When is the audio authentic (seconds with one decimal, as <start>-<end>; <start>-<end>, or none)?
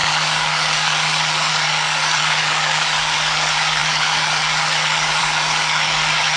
none